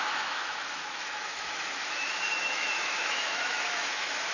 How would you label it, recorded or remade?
remade